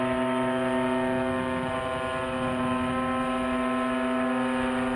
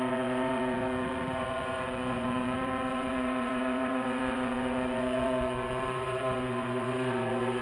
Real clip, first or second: first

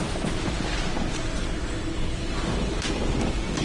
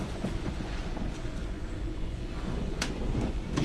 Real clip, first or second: first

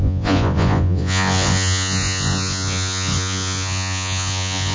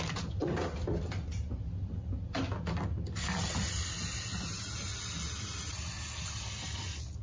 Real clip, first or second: second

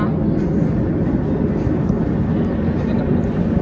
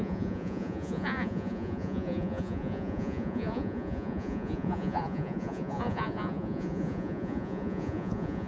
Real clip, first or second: first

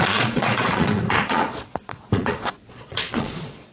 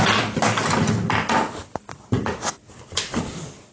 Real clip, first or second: second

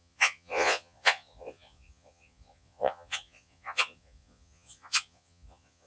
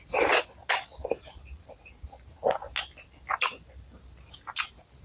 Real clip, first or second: second